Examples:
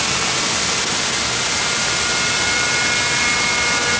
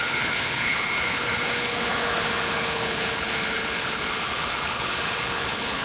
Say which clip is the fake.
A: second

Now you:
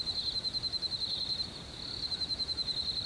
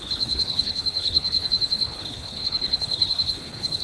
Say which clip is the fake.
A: second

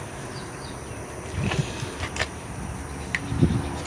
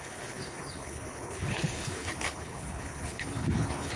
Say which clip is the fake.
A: second